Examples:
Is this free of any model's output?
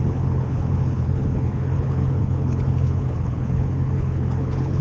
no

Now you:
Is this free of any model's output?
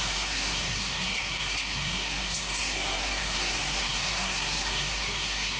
no